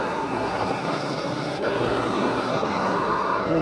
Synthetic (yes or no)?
yes